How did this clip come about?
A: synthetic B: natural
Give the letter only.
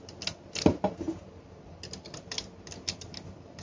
B